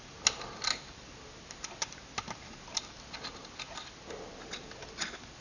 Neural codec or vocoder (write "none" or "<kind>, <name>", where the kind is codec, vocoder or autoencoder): none